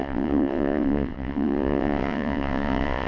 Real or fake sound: fake